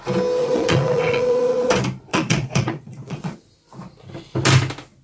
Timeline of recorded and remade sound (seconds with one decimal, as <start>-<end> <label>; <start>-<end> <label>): 0.0-0.4 recorded; 0.4-1.7 remade; 1.7-2.1 recorded; 2.1-3.4 remade; 3.4-5.0 recorded